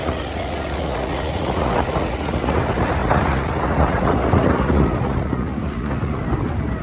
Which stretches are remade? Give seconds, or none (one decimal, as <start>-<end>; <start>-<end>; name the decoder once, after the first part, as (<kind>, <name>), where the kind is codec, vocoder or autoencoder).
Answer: 0.0-6.2 (vocoder, Vocos)